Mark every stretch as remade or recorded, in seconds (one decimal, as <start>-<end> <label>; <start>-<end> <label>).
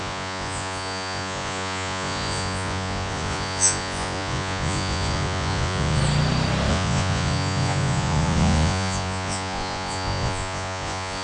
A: 0.0-6.0 remade; 6.0-6.7 recorded; 6.7-11.2 remade